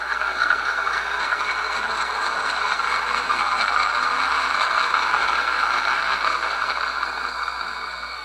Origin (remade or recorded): remade